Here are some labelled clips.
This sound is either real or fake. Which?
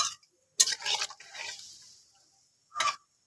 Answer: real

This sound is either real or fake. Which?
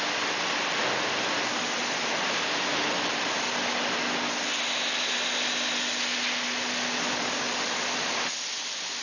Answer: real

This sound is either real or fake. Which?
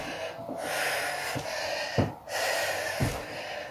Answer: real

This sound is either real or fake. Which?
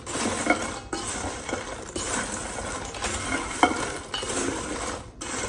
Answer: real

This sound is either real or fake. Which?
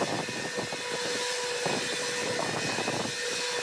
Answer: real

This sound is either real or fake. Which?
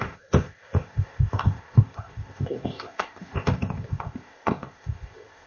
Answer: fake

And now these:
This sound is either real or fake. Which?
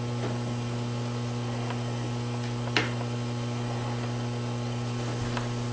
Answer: real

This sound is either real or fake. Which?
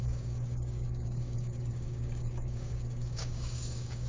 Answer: fake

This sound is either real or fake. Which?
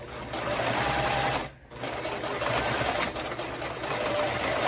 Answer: real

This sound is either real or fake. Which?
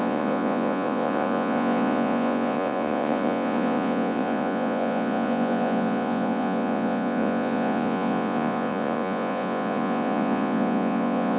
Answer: fake